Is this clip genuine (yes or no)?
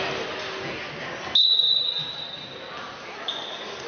yes